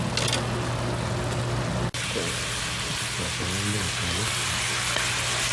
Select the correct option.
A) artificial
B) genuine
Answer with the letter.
B